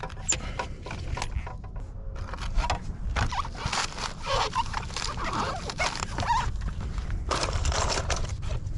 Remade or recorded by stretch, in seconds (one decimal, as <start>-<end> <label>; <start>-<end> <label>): 0.0-3.8 recorded; 3.8-8.8 remade